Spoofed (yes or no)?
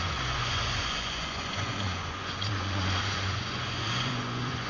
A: yes